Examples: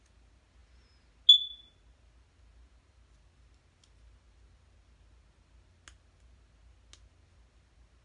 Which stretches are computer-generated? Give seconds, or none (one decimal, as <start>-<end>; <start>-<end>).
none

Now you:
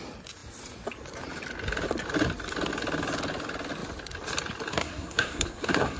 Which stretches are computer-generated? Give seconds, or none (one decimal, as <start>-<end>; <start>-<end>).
4.7-6.0

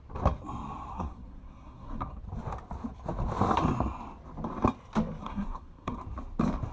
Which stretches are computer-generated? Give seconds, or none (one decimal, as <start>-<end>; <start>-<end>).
0.9-2.2; 5.2-6.0

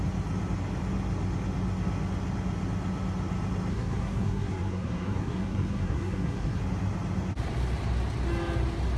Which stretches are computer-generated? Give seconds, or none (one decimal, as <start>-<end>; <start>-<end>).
3.7-6.6

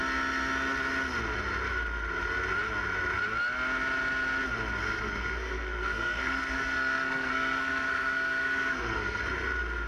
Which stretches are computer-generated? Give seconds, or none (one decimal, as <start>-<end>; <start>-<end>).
4.8-9.2